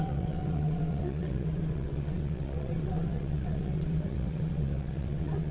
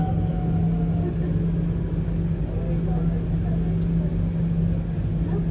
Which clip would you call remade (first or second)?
first